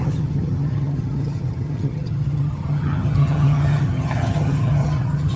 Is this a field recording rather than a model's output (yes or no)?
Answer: no